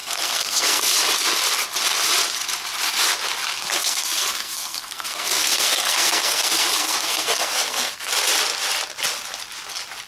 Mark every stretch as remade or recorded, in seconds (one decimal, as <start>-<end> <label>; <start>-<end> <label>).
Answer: 0.0-0.9 remade; 0.9-3.5 recorded; 3.5-8.1 remade; 8.1-10.1 recorded